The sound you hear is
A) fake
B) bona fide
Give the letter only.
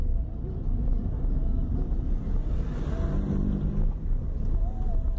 B